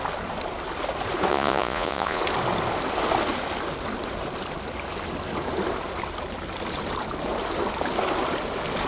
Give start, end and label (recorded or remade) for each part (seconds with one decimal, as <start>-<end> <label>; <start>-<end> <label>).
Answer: 0.0-1.3 recorded; 1.3-2.2 remade; 2.2-8.9 recorded